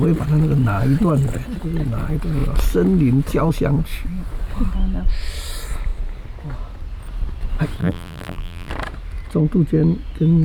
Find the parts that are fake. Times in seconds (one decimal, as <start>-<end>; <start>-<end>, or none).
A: 7.8-8.7